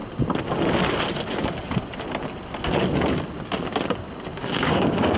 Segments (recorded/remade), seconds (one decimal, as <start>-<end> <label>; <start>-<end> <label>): 0.0-4.4 recorded; 4.4-5.2 remade